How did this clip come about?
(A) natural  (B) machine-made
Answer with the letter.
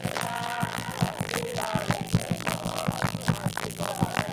B